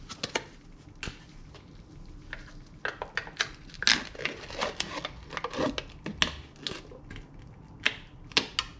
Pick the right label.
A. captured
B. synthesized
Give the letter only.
A